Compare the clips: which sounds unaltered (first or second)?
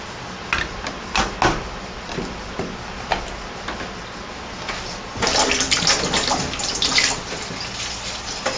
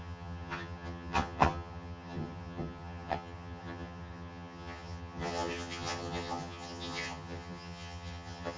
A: first